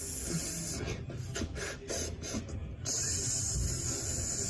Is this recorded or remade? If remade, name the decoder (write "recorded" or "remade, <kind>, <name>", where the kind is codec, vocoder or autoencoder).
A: recorded